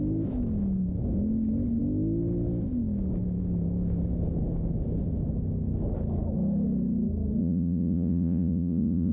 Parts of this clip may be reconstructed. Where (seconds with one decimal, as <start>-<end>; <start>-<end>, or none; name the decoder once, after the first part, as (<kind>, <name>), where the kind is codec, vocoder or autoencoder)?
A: 7.4-9.1 (vocoder, Vocos)